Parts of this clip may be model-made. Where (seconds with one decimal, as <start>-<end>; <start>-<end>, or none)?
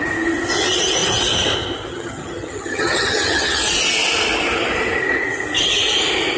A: 1.9-3.6